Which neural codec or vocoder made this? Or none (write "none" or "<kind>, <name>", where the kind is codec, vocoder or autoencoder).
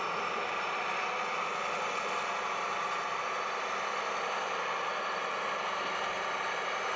none